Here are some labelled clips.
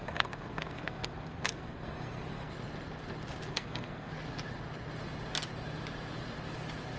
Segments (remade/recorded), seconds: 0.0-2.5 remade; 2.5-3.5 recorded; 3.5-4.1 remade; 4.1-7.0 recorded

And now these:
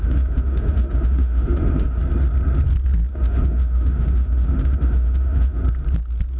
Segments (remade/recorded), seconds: 0.0-2.0 remade; 2.0-3.1 recorded; 3.1-5.6 remade; 5.6-6.4 recorded

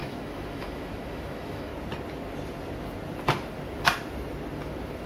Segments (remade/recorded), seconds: 0.0-1.7 remade; 1.7-5.1 recorded

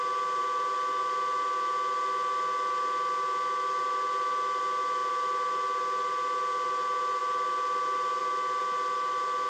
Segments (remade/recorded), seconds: 0.0-9.5 recorded

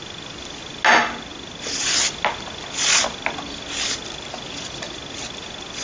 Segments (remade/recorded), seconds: 0.0-5.8 recorded

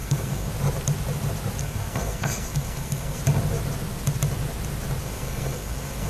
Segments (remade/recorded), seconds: 0.0-0.5 remade; 0.5-1.6 recorded; 1.6-3.2 remade; 3.2-5.0 recorded; 5.0-6.1 remade

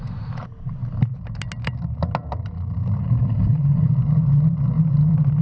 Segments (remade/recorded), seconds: 0.0-3.0 recorded; 3.0-3.9 remade; 3.9-5.4 recorded

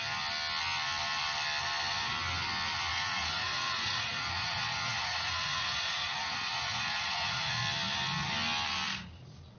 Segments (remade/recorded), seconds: 0.0-2.9 recorded; 2.9-7.6 remade; 7.6-9.6 recorded